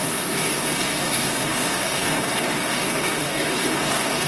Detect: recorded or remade remade